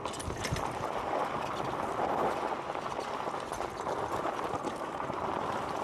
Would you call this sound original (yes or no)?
yes